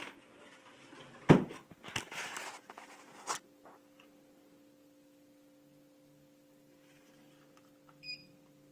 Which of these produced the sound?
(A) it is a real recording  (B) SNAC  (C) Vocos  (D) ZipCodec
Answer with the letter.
A